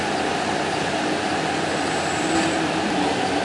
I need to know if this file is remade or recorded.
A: recorded